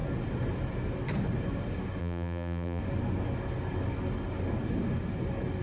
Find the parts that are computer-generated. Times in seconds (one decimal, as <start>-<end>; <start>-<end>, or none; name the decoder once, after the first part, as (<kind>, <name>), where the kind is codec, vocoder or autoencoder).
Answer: 2.0-2.8 (vocoder, BigVGAN v2)